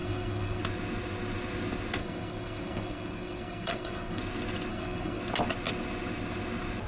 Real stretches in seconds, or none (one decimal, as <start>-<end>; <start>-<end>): 0.6-2.0; 4.2-4.7; 5.2-6.9